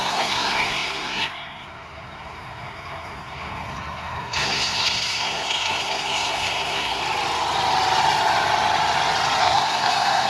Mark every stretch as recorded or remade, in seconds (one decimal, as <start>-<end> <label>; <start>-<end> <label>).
0.0-7.0 remade; 7.0-9.4 recorded; 9.4-10.3 remade